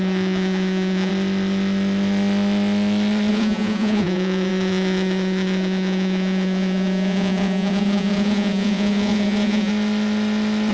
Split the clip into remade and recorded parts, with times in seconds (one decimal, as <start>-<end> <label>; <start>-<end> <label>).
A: 0.0-1.1 remade; 1.1-3.3 recorded; 3.3-9.7 remade; 9.7-10.7 recorded